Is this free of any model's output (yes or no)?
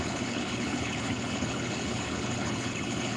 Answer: no